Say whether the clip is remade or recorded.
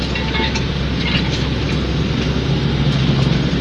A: recorded